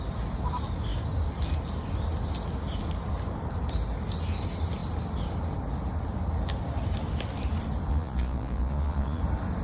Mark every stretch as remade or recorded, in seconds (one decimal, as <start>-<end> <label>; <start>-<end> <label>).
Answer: 0.0-7.9 recorded; 7.9-9.2 remade; 9.2-9.6 recorded

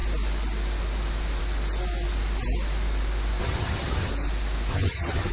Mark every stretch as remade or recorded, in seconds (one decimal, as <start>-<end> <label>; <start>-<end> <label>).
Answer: 0.0-3.4 recorded; 3.4-4.1 remade; 4.1-4.7 recorded; 4.7-5.3 remade

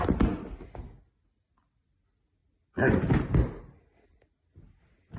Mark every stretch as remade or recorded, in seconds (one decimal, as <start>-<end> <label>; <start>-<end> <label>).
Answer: 0.0-5.2 recorded

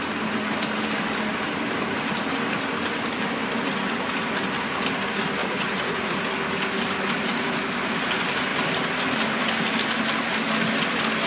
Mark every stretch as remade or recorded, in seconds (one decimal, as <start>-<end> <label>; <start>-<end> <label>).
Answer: 0.0-5.4 recorded; 5.4-6.2 remade; 6.2-11.3 recorded

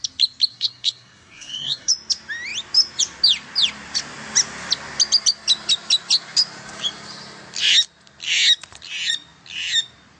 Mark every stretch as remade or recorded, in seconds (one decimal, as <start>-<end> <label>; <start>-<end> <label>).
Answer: 0.0-0.5 recorded; 0.5-1.9 remade; 1.9-10.2 recorded

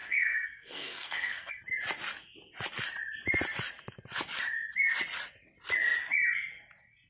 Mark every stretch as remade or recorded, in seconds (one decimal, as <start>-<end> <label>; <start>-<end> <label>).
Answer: 0.0-1.5 remade; 1.5-7.1 recorded

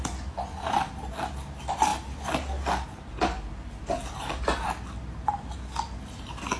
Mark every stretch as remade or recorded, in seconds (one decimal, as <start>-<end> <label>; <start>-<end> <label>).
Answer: 0.0-6.6 recorded

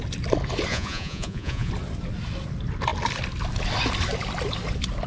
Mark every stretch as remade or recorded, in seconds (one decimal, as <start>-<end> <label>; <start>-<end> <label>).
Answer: 0.0-0.7 recorded; 0.7-1.7 remade; 1.7-5.1 recorded